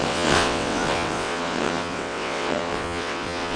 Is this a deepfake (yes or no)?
yes